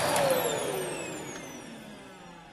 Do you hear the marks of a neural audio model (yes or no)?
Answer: no